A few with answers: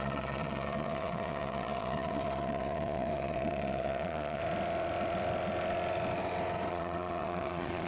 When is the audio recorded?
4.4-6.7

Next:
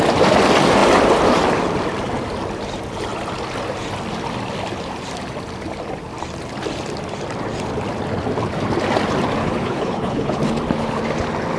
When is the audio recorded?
0.0-9.4; 10.4-11.6

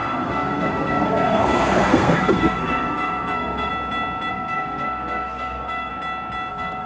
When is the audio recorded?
1.4-1.9; 3.7-4.3; 5.9-6.5